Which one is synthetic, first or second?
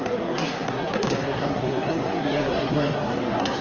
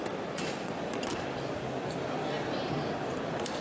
first